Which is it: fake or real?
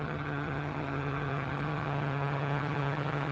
fake